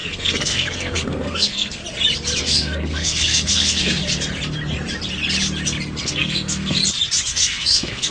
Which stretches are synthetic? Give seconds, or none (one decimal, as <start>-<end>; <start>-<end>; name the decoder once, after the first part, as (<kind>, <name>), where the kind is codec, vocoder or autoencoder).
0.0-1.8 (codec, SNAC); 2.4-4.0; 6.0-6.8; 7.3-8.1